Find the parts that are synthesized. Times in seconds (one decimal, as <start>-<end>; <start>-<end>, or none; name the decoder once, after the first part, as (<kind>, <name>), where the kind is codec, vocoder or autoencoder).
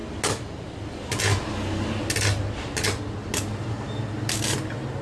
none